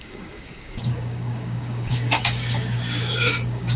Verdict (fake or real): fake